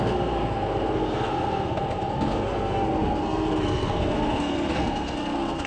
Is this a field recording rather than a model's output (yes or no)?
no